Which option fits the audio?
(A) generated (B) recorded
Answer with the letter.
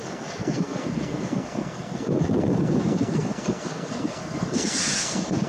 A